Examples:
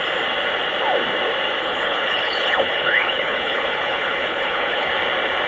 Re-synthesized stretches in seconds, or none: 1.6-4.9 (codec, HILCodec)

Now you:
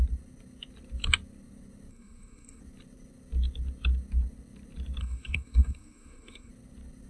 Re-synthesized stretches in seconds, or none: 1.9-2.6 (codec, SNAC); 5.0-6.5

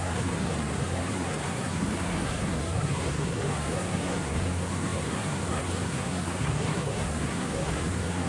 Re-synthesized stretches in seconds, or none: 0.0-8.3 (codec, SNAC)

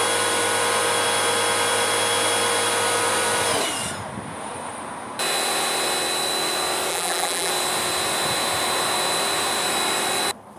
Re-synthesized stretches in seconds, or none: 6.9-7.5 (vocoder, BigVGAN v2)

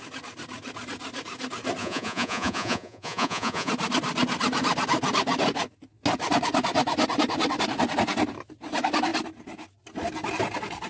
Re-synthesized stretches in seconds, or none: 1.8-3.7 (vocoder, Vocos)

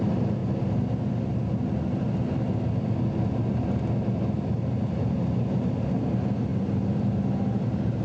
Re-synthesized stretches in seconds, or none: none